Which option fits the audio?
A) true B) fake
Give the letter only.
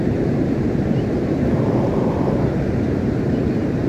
B